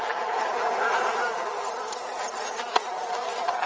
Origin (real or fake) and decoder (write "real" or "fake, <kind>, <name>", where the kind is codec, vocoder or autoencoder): real